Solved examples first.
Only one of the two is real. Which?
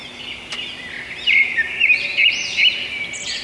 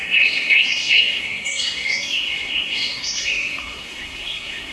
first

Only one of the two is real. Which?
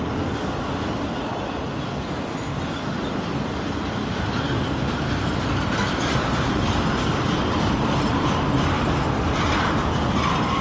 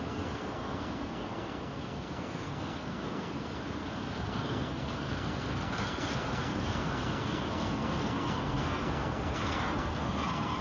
first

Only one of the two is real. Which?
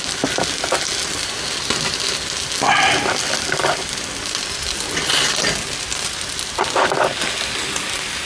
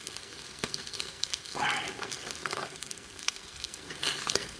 first